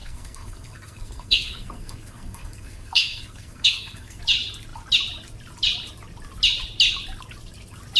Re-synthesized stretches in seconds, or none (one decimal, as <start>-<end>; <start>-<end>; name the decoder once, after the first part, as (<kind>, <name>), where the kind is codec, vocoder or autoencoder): 0.0-4.2 (codec, SNAC)